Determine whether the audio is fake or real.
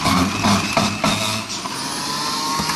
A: real